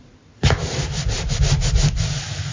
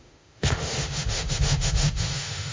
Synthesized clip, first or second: second